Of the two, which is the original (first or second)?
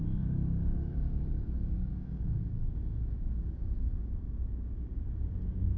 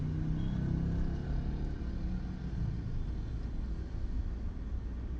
second